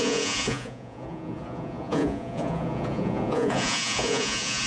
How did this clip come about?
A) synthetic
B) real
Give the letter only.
A